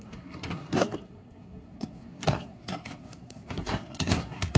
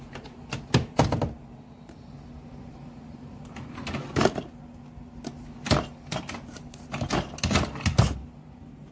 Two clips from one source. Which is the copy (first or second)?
first